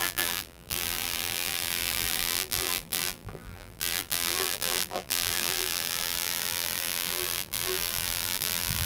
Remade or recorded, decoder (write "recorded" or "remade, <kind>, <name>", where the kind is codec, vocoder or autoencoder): remade, vocoder, BigVGAN v2